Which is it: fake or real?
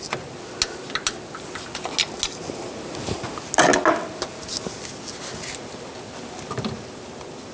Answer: real